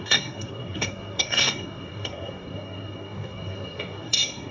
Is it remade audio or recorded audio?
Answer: remade